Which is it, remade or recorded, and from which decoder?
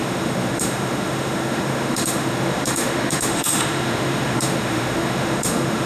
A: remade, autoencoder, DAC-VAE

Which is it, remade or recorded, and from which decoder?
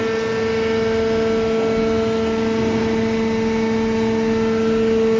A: recorded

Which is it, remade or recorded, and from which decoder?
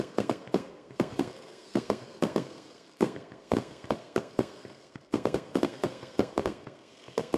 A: remade, codec, SNAC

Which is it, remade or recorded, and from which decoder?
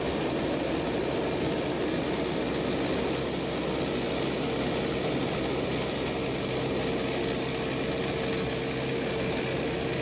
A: recorded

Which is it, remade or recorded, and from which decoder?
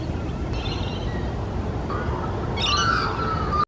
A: recorded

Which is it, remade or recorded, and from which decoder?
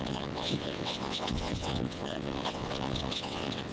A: remade, vocoder, WaveNeXt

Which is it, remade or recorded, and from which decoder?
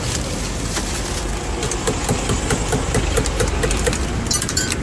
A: recorded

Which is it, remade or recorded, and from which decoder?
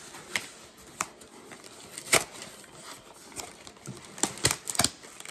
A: recorded